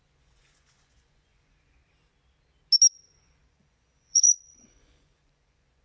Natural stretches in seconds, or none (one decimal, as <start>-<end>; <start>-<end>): 1.8-2.9